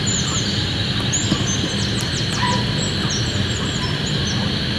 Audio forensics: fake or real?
real